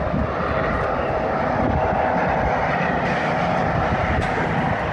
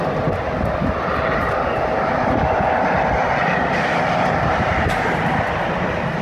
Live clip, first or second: first